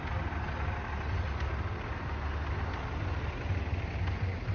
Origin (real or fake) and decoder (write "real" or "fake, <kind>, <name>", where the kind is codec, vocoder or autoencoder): real